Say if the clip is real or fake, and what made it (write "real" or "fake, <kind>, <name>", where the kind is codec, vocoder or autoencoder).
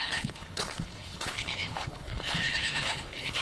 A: fake, codec, HILCodec